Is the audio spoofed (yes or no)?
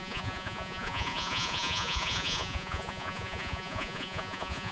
yes